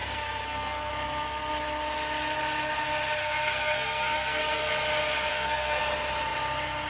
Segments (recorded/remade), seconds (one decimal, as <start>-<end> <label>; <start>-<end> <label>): 0.0-0.9 remade; 0.9-3.2 recorded; 3.2-4.7 remade; 4.7-5.3 recorded; 5.3-5.8 remade; 5.8-6.9 recorded